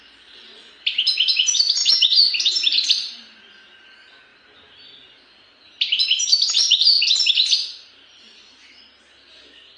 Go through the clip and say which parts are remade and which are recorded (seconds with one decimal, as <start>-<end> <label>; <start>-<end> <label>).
0.0-1.8 recorded; 1.8-3.8 remade; 3.8-4.3 recorded; 4.3-7.1 remade; 7.1-9.8 recorded